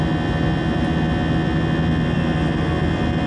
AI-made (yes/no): no